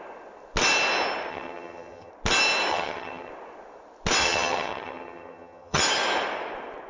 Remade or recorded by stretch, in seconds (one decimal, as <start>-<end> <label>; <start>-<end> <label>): 0.0-1.3 recorded; 1.3-2.1 remade; 2.1-2.7 recorded; 2.7-3.3 remade; 3.3-4.2 recorded; 4.2-5.8 remade; 5.8-6.9 recorded